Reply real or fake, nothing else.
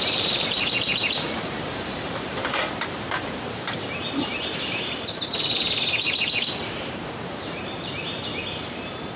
fake